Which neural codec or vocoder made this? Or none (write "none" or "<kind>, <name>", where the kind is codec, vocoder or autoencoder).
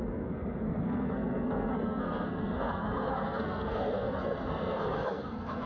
codec, SNAC